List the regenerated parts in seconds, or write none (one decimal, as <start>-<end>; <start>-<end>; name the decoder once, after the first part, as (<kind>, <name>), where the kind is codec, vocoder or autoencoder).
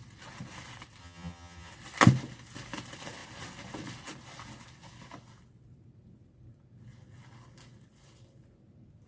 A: 1.0-1.7 (vocoder, HiFi-GAN)